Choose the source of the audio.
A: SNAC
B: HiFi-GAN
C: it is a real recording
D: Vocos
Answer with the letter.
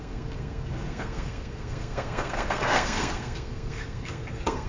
A